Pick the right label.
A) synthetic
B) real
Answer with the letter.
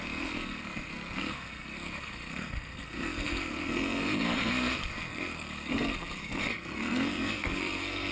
A